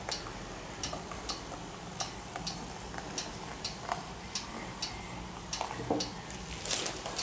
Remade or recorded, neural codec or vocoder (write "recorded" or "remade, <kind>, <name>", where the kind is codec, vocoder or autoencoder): recorded